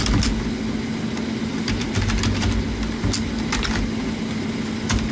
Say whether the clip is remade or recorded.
recorded